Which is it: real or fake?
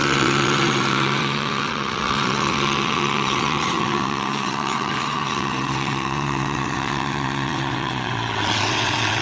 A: fake